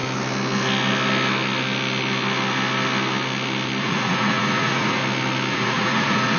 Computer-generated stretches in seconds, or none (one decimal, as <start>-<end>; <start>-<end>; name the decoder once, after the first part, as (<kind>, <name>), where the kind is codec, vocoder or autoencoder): 3.8-5.0 (vocoder, Vocos); 5.5-6.4